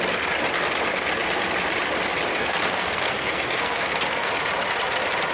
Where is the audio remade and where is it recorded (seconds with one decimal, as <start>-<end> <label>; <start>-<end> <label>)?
0.0-2.3 recorded; 2.3-4.3 remade; 4.3-5.3 recorded